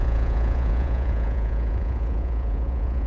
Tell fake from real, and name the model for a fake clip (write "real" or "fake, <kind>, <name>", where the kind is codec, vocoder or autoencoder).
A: fake, vocoder, Vocos